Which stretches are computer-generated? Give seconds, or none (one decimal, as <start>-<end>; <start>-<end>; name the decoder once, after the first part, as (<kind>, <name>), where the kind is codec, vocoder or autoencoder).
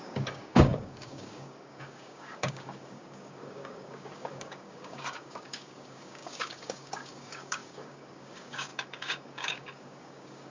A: 0.0-10.5 (codec, DAC)